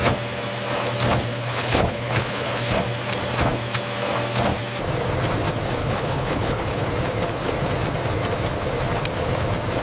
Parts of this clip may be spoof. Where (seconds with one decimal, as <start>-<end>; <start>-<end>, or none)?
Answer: 1.3-2.8; 5.8-6.9